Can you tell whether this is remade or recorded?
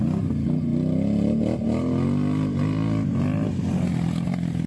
recorded